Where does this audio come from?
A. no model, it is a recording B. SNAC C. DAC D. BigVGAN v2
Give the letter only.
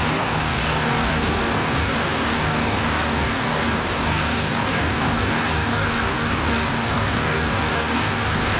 C